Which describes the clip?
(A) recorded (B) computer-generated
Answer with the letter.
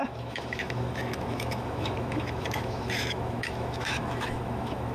B